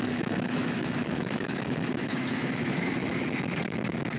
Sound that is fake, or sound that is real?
fake